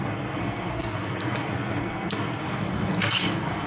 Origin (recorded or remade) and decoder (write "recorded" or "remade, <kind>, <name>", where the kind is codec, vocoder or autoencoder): remade, codec, SNAC